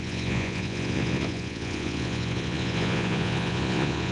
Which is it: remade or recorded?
remade